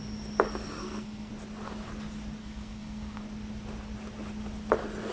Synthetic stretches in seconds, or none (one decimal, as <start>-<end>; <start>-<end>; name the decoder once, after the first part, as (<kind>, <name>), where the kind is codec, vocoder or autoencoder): 0.8-1.3 (codec, SNAC); 2.4-3.2